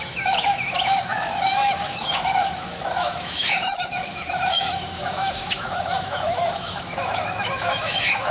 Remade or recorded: remade